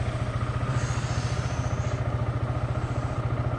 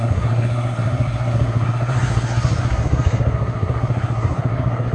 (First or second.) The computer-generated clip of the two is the second